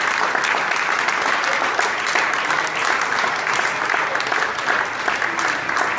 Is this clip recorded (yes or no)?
yes